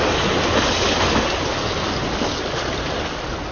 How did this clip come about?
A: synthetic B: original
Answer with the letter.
B